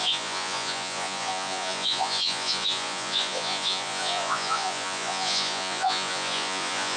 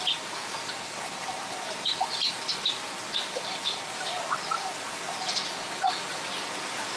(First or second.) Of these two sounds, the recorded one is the second